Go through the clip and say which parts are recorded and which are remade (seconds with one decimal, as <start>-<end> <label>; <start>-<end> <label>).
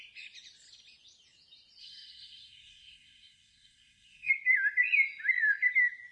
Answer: 0.0-1.8 recorded; 1.8-4.3 remade; 4.3-6.1 recorded